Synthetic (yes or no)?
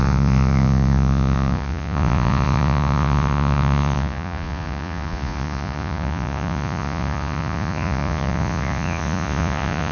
yes